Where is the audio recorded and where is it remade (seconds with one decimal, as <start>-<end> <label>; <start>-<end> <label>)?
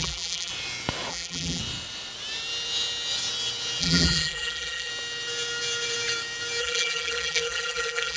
0.0-0.5 remade; 0.5-1.1 recorded; 1.1-1.6 remade; 1.6-3.8 recorded; 3.8-4.9 remade; 4.9-6.6 recorded; 6.6-8.2 remade